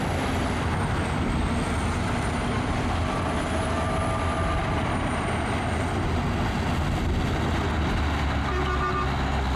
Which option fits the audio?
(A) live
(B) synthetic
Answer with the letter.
A